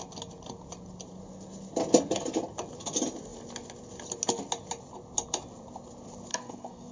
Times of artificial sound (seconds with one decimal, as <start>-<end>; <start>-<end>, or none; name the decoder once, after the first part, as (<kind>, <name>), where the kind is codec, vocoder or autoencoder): 6.3-6.9 (codec, SNAC)

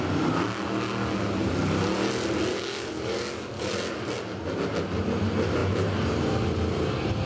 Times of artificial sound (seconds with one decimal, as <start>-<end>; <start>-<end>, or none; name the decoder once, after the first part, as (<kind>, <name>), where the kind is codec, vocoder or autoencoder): 2.5-3.7 (codec, DAC)

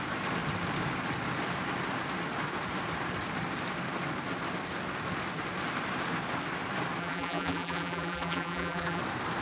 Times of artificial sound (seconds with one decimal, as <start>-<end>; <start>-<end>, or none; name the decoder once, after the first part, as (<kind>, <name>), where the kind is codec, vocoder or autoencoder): 7.0-9.0 (vocoder, BigVGAN v2)